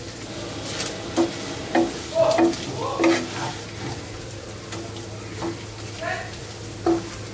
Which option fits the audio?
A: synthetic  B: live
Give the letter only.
B